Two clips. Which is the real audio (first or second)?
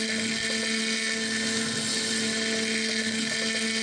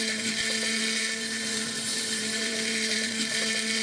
first